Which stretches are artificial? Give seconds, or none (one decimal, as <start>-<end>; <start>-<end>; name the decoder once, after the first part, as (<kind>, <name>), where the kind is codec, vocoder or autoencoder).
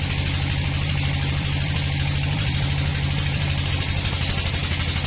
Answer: 0.0-4.6 (vocoder, BigVGAN v2)